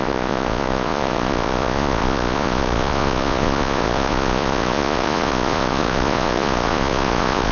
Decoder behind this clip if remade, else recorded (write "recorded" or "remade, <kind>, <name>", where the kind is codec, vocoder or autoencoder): remade, vocoder, Vocos